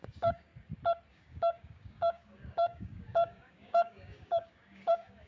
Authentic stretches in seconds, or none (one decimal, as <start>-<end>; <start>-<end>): 0.5-1.1